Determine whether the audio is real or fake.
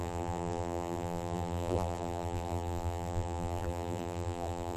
fake